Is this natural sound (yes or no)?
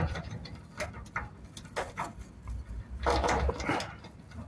yes